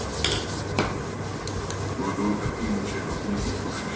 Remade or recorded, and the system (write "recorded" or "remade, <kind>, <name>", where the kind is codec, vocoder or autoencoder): recorded